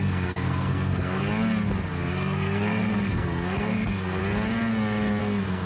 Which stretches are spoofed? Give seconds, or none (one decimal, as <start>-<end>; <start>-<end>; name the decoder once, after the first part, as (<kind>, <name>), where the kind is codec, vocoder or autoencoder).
0.0-1.2 (codec, SNAC); 2.1-4.2; 5.2-5.7